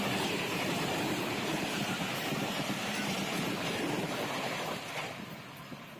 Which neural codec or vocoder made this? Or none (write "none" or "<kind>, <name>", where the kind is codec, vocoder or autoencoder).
none